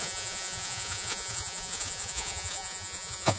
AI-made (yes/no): yes